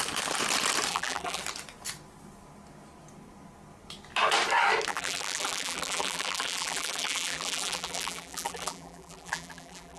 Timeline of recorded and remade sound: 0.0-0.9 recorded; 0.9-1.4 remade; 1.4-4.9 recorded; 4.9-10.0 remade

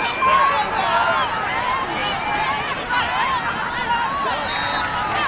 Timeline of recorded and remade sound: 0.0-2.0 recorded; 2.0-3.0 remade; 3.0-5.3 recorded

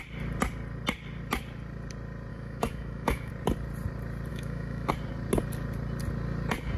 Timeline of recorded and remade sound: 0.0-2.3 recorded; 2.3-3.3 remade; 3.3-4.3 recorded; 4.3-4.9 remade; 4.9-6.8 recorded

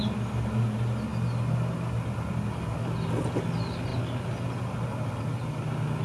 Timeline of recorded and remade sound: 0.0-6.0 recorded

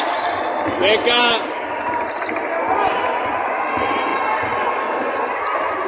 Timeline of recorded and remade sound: 0.0-5.9 recorded

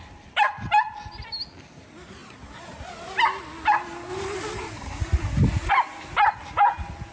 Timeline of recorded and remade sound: 0.0-7.1 recorded

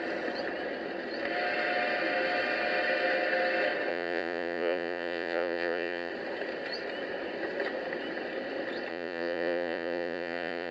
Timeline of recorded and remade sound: 0.0-3.9 recorded; 3.9-6.1 remade; 6.1-8.9 recorded; 8.9-10.7 remade

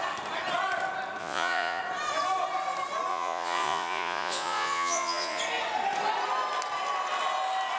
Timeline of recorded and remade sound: 0.0-1.2 recorded; 1.2-1.8 remade; 1.8-3.1 recorded; 3.1-5.4 remade; 5.4-7.8 recorded